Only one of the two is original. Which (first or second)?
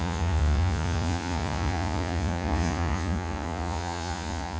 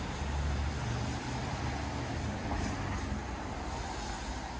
second